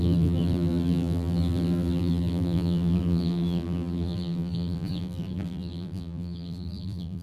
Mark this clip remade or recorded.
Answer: remade